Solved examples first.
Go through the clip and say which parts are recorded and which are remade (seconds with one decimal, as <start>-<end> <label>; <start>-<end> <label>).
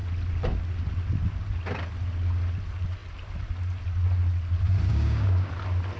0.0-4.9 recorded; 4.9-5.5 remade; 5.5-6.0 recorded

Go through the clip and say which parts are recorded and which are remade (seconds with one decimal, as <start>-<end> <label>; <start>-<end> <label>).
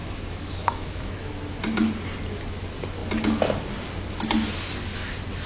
0.0-1.3 remade; 1.3-5.5 recorded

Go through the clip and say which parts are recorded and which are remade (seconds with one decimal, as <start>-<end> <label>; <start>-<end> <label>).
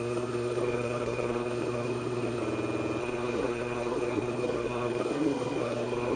0.0-2.4 remade; 2.4-3.0 recorded; 3.0-6.2 remade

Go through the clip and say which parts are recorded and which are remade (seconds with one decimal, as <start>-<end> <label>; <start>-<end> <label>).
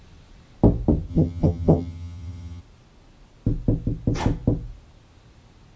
0.0-1.1 recorded; 1.1-2.6 remade; 2.6-5.8 recorded